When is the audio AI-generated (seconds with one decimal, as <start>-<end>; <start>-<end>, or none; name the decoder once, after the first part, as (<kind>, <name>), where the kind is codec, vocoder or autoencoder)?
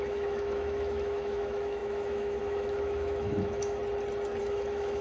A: 0.0-3.8 (autoencoder, DAC-VAE); 4.4-5.0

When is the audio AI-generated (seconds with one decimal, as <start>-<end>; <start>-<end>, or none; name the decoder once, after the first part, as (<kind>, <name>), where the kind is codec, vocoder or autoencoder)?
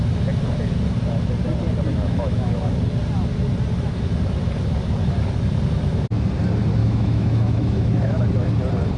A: 1.9-2.7 (autoencoder, DAC-VAE); 6.8-8.2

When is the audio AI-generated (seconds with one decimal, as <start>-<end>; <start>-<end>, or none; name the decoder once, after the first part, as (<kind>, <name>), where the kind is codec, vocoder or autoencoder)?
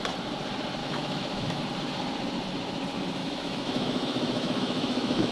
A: 0.8-1.6 (autoencoder, DAC-VAE); 3.2-5.3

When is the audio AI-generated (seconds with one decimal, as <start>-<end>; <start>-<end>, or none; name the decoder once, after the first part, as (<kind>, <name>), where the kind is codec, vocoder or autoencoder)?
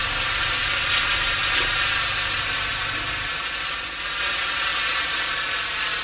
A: none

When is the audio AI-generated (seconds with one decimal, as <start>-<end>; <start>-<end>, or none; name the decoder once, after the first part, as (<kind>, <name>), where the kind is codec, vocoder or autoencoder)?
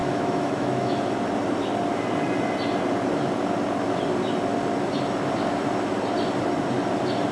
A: 0.0-1.0 (autoencoder, DAC-VAE)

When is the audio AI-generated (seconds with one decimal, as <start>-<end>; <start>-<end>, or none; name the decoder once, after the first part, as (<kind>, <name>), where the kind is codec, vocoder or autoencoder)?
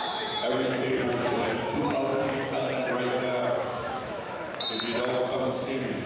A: 0.0-4.5 (autoencoder, DAC-VAE); 5.2-6.1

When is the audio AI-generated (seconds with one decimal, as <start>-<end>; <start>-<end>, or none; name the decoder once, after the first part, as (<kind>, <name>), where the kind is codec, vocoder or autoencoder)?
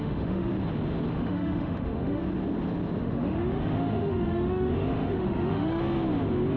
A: 0.0-0.5 (autoencoder, DAC-VAE); 1.1-2.2; 3.0-5.8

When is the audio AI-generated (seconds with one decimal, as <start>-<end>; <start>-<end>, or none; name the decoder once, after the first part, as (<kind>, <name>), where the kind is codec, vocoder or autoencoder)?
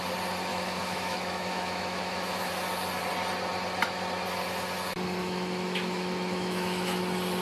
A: 0.5-2.5 (autoencoder, DAC-VAE); 5.2-7.0